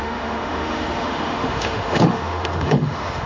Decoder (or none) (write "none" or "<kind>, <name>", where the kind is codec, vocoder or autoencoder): autoencoder, DAC-VAE